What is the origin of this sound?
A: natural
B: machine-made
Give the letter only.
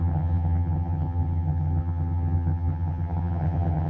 B